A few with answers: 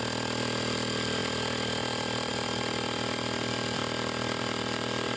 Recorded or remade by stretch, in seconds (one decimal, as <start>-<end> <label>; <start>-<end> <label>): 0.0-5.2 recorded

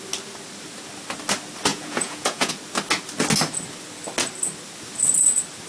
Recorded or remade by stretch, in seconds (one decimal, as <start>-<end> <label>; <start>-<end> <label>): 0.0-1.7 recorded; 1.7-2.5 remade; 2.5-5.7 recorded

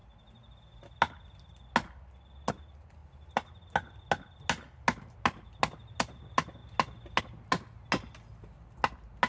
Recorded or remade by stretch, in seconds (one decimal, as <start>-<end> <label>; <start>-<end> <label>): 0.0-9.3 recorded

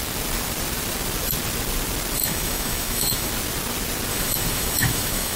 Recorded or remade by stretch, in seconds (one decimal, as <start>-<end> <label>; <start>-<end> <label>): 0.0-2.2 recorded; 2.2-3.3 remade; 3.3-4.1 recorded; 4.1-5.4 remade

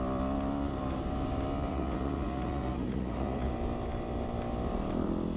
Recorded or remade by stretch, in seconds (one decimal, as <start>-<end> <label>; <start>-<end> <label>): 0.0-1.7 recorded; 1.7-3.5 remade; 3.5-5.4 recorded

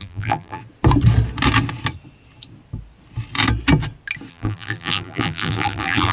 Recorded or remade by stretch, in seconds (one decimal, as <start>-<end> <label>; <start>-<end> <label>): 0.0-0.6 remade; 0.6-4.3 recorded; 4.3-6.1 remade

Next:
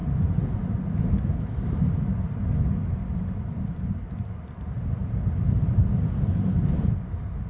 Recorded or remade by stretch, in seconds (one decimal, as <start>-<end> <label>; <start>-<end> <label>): 0.0-5.0 recorded; 5.0-6.8 remade; 6.8-7.5 recorded